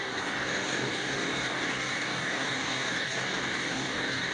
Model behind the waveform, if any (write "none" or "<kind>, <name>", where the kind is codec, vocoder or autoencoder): codec, DAC